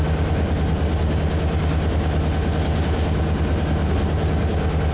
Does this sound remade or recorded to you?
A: recorded